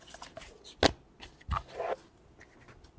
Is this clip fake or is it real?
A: real